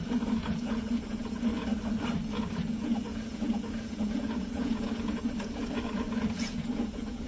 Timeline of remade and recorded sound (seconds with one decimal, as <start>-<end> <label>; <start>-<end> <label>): 0.0-1.7 remade; 1.7-2.4 recorded; 2.4-7.3 remade